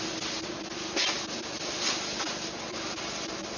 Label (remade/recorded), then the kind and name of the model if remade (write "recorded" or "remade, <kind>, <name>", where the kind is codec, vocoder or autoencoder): recorded